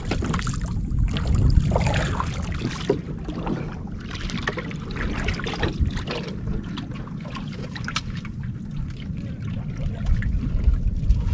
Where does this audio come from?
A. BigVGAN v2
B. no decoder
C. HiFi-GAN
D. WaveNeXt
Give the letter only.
B